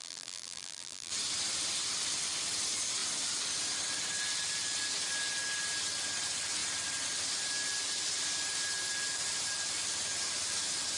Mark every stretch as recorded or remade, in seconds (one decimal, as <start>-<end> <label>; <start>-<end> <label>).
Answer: 0.0-1.1 remade; 1.1-11.0 recorded

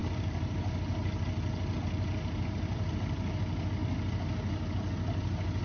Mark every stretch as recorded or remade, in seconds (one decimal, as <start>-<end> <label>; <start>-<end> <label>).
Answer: 0.0-3.4 remade; 3.4-5.6 recorded

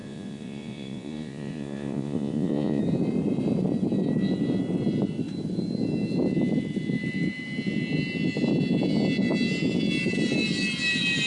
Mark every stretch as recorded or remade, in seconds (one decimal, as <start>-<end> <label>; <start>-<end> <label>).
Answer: 0.0-2.8 remade; 2.8-11.3 recorded

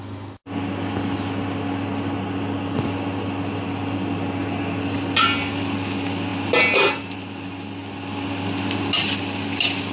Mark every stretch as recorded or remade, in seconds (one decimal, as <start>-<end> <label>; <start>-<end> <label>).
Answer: 0.0-9.9 recorded

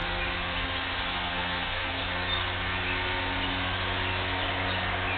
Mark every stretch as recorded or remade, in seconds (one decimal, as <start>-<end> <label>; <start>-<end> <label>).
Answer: 0.0-1.3 recorded; 1.3-2.0 remade; 2.0-5.2 recorded

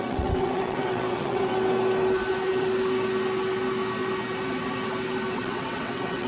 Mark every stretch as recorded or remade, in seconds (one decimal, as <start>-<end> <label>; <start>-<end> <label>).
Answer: 0.0-1.5 remade; 1.5-5.3 recorded; 5.3-6.3 remade

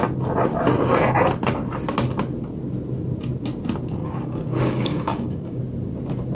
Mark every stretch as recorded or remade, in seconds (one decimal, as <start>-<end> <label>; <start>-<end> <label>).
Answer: 0.0-4.0 recorded; 4.0-5.6 remade; 5.6-6.3 recorded

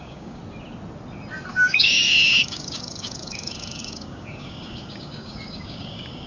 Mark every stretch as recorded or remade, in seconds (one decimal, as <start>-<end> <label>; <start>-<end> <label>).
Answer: 0.0-0.4 remade; 0.4-1.5 recorded; 1.5-6.3 remade